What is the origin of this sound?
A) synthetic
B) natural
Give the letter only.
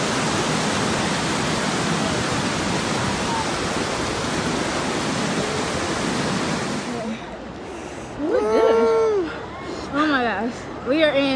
B